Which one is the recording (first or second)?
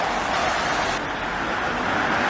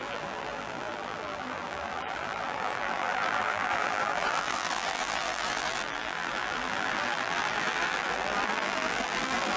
first